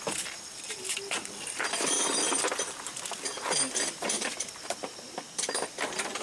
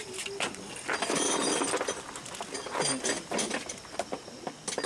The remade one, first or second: first